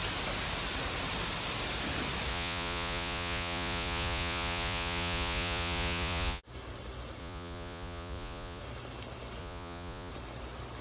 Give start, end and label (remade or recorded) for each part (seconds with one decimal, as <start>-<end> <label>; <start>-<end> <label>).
0.0-2.3 recorded; 2.3-6.4 remade; 6.4-7.2 recorded; 7.2-8.6 remade; 8.6-9.4 recorded; 9.4-10.1 remade; 10.1-10.8 recorded